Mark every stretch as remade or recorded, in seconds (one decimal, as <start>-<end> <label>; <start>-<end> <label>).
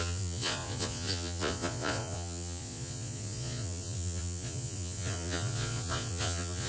0.0-6.7 remade